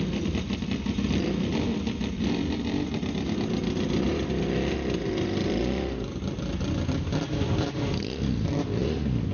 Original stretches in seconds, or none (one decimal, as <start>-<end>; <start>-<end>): 0.0-9.3